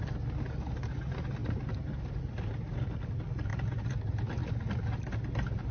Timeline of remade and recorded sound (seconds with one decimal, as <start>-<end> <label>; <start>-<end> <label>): 0.0-5.7 recorded